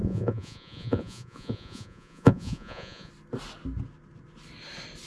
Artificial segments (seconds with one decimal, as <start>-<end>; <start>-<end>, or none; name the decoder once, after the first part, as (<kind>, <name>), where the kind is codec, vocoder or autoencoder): 0.0-3.1 (vocoder, Vocos)